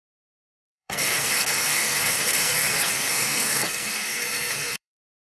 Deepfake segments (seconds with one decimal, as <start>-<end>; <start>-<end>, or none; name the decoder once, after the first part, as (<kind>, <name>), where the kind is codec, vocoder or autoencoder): 0.0-5.2 (codec, SNAC)